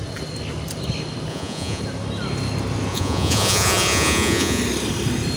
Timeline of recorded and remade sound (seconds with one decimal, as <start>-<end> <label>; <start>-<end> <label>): 0.0-1.3 recorded; 1.3-1.8 remade; 1.8-2.9 recorded; 2.9-4.6 remade; 4.6-5.4 recorded